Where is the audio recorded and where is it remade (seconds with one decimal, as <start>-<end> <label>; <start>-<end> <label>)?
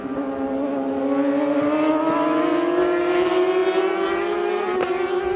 0.0-5.4 recorded